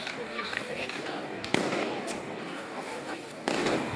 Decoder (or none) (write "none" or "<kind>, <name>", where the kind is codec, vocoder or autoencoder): codec, DAC